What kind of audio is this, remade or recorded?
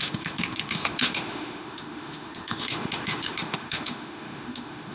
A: remade